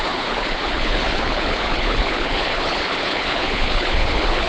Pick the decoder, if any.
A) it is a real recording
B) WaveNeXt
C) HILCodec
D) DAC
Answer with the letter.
C